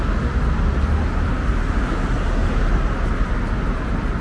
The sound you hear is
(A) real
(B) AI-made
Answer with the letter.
A